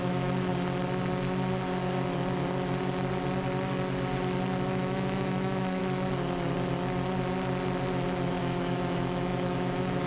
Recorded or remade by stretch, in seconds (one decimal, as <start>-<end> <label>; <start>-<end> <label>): 0.0-0.5 remade; 0.5-4.8 recorded; 4.8-5.8 remade; 5.8-8.4 recorded; 8.4-10.1 remade